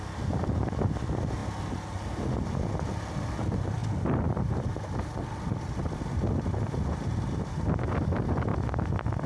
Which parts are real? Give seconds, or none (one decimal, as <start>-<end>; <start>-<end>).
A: 0.0-9.3